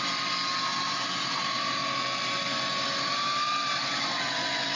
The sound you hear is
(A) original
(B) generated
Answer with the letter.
A